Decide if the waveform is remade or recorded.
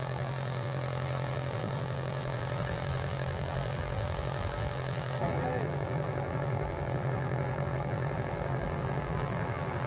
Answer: remade